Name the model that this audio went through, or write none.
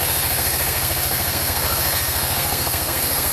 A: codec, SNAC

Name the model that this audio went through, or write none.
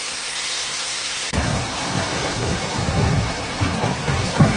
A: codec, SNAC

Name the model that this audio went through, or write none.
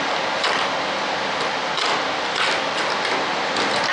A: none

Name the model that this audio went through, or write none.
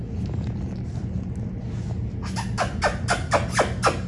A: none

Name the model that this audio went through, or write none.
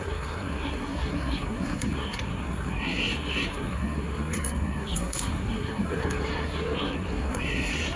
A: codec, SNAC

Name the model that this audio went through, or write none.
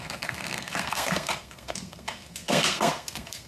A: codec, SNAC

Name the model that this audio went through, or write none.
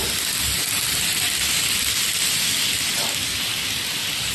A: none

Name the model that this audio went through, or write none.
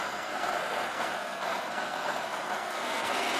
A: codec, SNAC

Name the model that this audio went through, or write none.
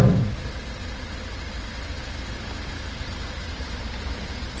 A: none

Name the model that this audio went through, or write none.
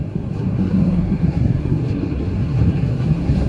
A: codec, SNAC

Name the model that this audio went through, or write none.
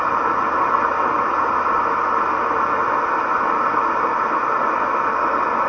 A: none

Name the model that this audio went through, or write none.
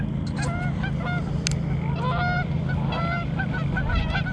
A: none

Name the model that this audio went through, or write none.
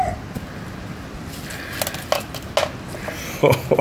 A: none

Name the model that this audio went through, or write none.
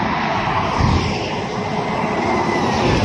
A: none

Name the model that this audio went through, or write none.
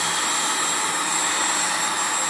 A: none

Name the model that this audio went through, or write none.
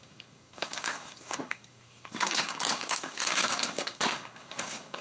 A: codec, SNAC